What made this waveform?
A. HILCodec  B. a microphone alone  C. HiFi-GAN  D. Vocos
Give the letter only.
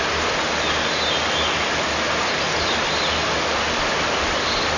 B